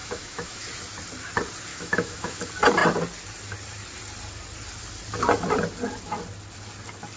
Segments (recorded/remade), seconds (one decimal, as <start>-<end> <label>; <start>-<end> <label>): 0.0-0.7 remade; 0.7-1.7 recorded; 1.7-2.4 remade; 2.4-7.2 recorded